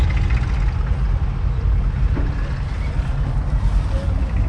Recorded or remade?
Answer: recorded